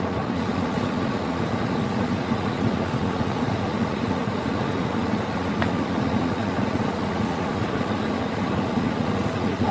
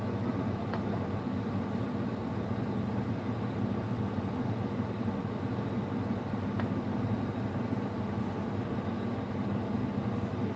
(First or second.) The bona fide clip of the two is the second